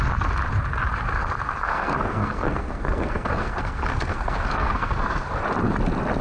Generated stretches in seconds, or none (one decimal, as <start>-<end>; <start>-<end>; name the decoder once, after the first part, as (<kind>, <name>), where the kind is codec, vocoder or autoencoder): 1.7-5.4 (codec, SNAC)